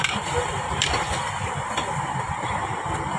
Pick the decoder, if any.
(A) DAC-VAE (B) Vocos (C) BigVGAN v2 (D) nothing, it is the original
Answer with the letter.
D